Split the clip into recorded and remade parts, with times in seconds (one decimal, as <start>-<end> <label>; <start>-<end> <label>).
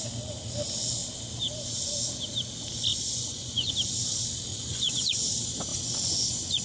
0.0-2.9 recorded; 2.9-3.7 remade; 3.7-4.5 recorded; 4.5-5.2 remade; 5.2-5.7 recorded; 5.7-6.6 remade